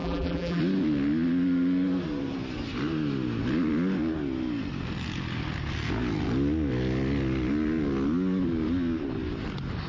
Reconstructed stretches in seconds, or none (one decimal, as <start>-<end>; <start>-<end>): 0.0-0.6